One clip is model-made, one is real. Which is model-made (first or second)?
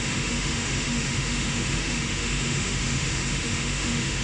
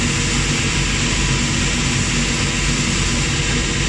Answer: first